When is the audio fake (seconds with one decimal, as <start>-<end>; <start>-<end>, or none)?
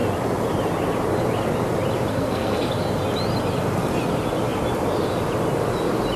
2.1-2.7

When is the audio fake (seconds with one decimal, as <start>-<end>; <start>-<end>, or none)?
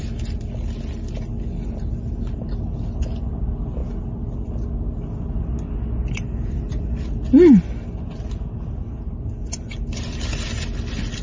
none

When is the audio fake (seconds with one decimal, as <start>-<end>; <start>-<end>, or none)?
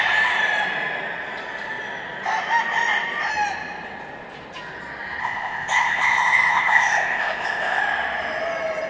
5.2-7.8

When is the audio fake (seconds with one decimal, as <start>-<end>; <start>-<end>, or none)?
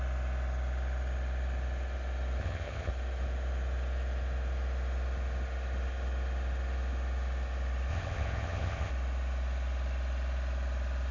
2.4-2.9; 7.9-8.9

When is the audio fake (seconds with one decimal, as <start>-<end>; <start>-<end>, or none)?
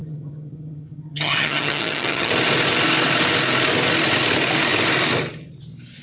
0.0-2.3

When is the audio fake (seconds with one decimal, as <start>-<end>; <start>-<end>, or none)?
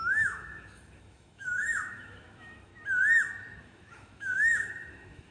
0.0-2.7; 3.6-5.3